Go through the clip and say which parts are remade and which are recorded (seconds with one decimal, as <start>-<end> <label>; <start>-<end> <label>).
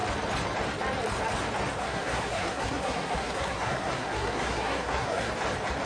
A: 0.0-1.8 recorded; 1.8-5.3 remade; 5.3-5.9 recorded